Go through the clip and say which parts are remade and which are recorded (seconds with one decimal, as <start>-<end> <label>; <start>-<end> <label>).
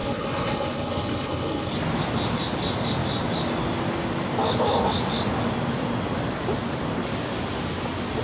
0.0-1.7 remade; 1.7-8.2 recorded